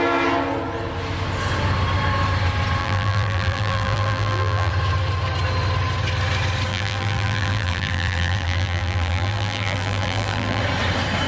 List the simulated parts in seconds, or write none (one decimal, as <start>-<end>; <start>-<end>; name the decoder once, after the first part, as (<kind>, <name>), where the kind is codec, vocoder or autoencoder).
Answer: 2.8-4.7 (vocoder, BigVGAN v2); 6.7-10.6